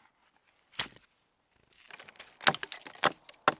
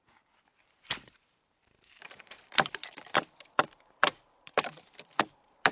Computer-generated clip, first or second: second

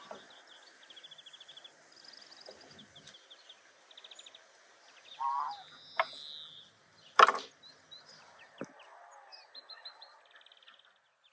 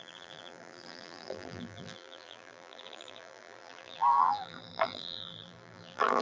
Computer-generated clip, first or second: second